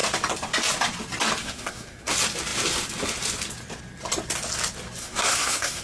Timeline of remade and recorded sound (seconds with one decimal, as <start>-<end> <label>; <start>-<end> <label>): 0.0-1.4 recorded; 1.4-2.1 remade; 2.1-5.0 recorded; 5.0-5.8 remade